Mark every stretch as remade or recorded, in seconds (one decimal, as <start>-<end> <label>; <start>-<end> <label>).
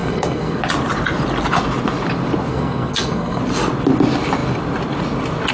0.0-0.6 remade; 0.6-2.5 recorded; 2.5-3.4 remade; 3.4-5.5 recorded